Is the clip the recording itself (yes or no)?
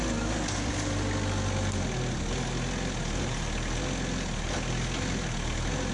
yes